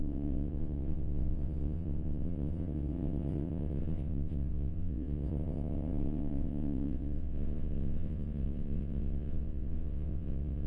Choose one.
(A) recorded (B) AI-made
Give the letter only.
B